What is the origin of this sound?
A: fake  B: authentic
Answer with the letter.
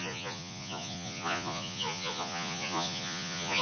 A